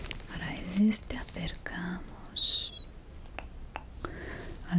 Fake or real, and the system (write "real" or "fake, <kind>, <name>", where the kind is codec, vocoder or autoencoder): real